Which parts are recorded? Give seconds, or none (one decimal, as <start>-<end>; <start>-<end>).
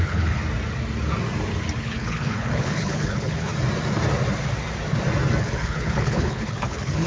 0.4-1.8; 3.5-5.4